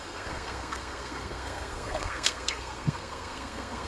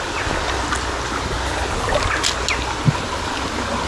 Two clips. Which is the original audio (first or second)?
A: second